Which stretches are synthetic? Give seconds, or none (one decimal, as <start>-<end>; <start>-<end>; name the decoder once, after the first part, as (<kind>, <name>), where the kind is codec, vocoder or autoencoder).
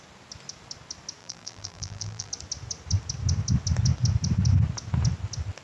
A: 1.2-2.3 (vocoder, BigVGAN v2)